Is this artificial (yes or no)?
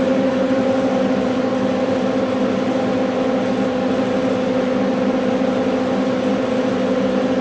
no